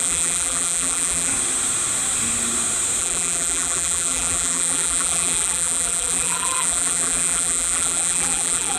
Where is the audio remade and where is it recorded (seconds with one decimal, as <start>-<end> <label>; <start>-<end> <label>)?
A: 0.0-1.3 remade; 1.3-3.0 recorded; 3.0-8.8 remade